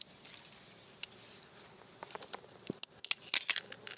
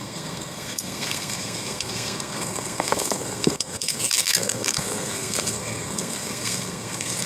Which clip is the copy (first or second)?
second